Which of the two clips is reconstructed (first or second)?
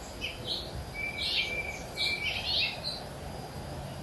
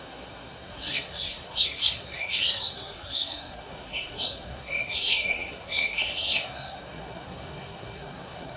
second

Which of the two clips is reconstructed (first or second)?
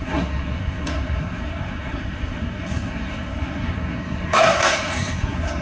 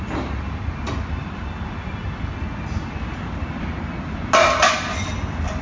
first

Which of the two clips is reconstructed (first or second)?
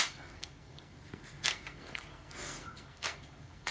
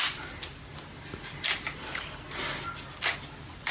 first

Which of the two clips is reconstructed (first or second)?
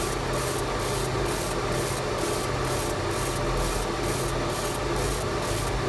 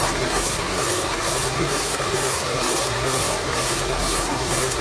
second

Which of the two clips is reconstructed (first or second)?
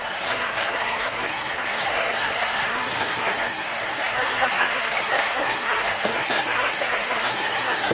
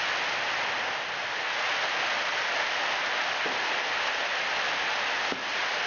first